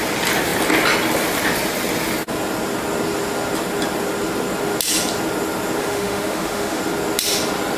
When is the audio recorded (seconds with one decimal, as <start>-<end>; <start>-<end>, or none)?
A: 0.0-5.8; 6.8-7.8